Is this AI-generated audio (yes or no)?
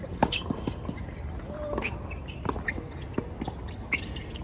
no